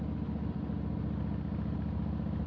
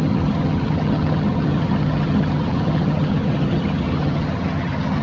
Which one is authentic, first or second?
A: first